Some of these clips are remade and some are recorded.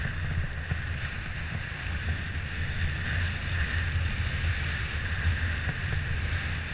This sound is recorded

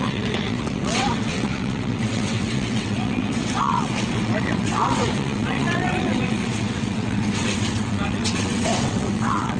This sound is remade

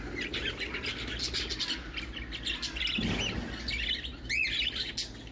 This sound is recorded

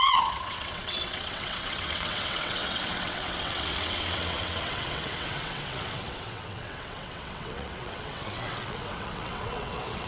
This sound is remade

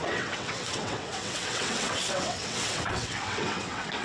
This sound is remade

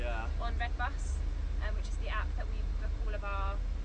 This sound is recorded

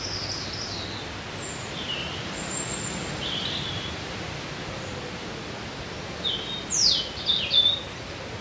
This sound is recorded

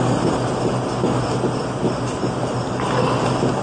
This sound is recorded